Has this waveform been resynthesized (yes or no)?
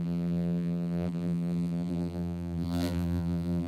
yes